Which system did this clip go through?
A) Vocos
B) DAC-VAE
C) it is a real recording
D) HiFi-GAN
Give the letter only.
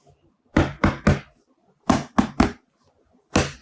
C